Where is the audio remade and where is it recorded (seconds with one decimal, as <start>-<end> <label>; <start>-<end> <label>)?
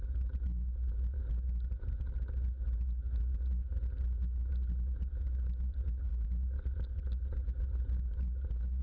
0.0-6.1 recorded; 6.1-7.0 remade; 7.0-8.8 recorded